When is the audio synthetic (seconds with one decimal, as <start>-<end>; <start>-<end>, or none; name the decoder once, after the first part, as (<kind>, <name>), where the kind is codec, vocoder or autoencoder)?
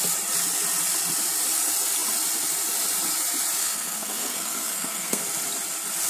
3.6-5.2 (codec, SNAC)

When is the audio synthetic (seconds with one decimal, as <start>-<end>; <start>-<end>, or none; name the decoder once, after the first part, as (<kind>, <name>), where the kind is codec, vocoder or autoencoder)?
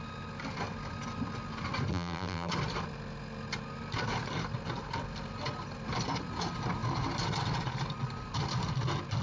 1.9-2.5 (vocoder, BigVGAN v2)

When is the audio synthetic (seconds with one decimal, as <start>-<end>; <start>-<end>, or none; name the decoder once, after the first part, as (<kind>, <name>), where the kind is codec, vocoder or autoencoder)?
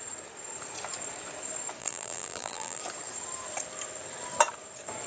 1.8-2.8 (vocoder, BigVGAN v2)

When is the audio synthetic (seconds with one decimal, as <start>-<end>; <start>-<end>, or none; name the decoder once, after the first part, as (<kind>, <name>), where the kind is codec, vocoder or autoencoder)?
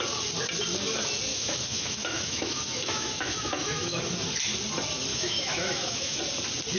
1.3-4.0 (autoencoder, DAC-VAE); 5.1-6.2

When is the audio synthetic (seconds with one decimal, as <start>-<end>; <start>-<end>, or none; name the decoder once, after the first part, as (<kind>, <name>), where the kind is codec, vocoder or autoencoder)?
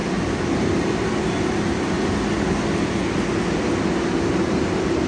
none